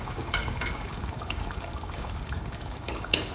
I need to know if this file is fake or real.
fake